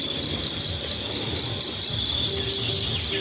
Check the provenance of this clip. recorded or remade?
recorded